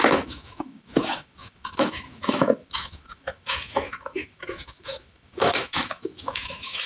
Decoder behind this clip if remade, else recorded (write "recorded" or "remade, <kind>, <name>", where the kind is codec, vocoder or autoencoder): remade, autoencoder, DAC-VAE